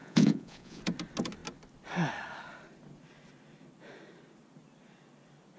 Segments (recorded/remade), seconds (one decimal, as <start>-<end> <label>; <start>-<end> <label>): 0.0-0.8 remade; 0.8-5.6 recorded